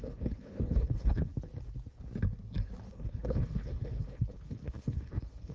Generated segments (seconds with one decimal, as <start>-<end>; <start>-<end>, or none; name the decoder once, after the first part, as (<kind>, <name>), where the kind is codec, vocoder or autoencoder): 0.0-1.3 (codec, HILCodec); 2.9-5.5